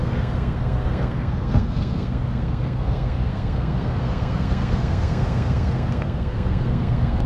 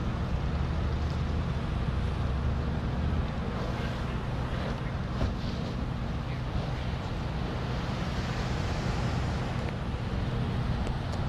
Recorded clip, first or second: second